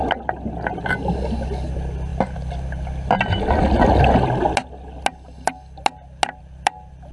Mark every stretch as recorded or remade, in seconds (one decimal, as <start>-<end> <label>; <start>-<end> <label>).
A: 0.0-7.1 recorded